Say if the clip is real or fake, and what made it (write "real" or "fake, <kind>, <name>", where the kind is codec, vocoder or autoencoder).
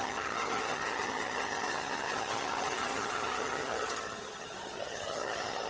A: fake, vocoder, HiFi-GAN